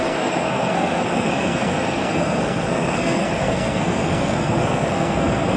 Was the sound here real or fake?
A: fake